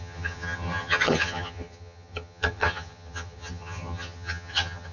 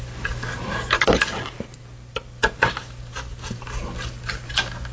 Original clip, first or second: second